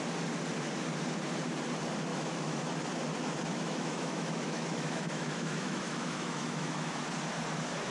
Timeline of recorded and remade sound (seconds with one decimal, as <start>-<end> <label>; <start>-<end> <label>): 0.0-2.1 recorded; 2.1-2.6 remade; 2.6-3.5 recorded; 3.5-7.0 remade; 7.0-7.9 recorded